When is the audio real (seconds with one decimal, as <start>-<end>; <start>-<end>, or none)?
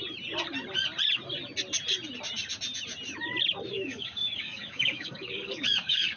0.0-3.7